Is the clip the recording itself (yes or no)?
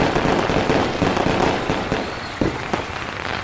yes